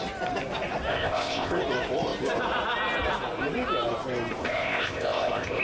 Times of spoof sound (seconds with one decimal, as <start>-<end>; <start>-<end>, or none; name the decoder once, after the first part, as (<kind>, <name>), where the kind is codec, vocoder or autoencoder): 0.9-1.6 (codec, ZipCodec); 4.4-5.6